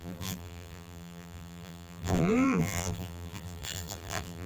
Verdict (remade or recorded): remade